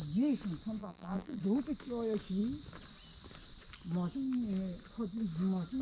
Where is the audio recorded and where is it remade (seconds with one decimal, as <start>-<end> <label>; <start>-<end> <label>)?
0.0-0.8 recorded; 0.8-1.4 remade; 1.4-5.8 recorded